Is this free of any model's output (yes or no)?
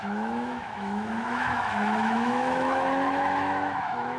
no